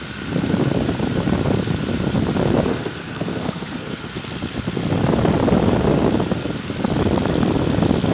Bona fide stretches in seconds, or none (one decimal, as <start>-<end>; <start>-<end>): 0.0-2.7; 4.1-8.1